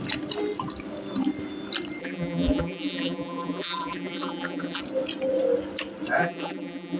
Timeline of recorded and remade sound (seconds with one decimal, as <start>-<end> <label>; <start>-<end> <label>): 0.0-2.0 recorded; 2.0-4.8 remade; 4.8-6.2 recorded; 6.2-7.0 remade